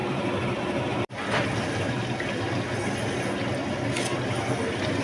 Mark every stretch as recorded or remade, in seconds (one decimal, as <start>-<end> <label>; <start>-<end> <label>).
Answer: 0.0-1.3 remade; 1.3-5.0 recorded